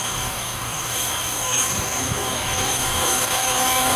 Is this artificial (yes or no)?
yes